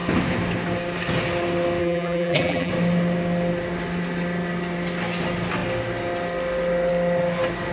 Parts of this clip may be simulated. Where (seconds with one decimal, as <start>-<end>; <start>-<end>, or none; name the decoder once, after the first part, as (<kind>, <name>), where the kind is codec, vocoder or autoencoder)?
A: 1.8-2.7 (vocoder, BigVGAN v2)